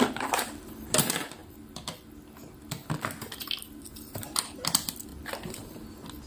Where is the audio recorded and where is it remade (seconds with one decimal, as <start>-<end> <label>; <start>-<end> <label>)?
0.0-5.1 remade; 5.1-6.3 recorded